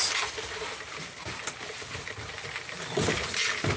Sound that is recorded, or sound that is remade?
recorded